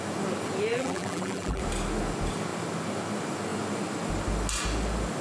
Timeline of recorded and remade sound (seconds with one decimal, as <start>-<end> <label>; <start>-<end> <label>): 0.0-0.7 recorded; 0.7-1.6 remade; 1.6-5.2 recorded